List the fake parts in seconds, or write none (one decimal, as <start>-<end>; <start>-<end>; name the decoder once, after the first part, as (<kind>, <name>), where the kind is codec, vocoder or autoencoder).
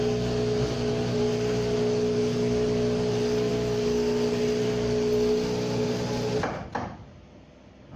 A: none